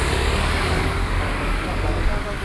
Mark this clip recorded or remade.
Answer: remade